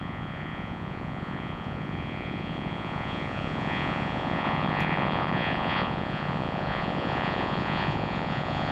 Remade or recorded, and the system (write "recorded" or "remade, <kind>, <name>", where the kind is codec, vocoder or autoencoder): remade, vocoder, Vocos